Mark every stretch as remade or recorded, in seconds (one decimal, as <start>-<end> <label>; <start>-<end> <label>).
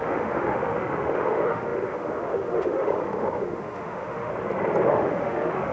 0.0-4.3 remade; 4.3-4.9 recorded; 4.9-5.7 remade